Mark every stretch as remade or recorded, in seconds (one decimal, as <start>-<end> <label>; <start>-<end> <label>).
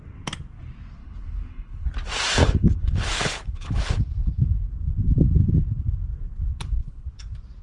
0.0-1.0 recorded; 1.0-1.9 remade; 1.9-2.4 recorded; 2.4-4.7 remade; 4.7-6.5 recorded; 6.5-7.1 remade; 7.1-7.6 recorded